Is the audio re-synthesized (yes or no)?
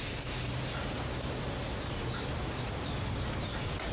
no